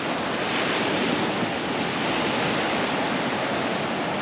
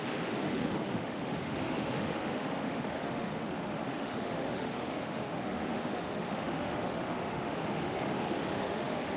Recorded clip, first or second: first